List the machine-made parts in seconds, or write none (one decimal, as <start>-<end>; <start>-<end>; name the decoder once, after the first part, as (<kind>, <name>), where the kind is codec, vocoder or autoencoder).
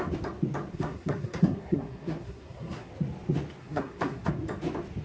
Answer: 0.7-2.9 (codec, SNAC); 3.6-4.3